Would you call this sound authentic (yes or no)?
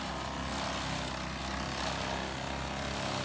yes